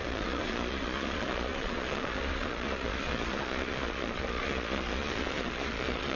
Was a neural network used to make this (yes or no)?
yes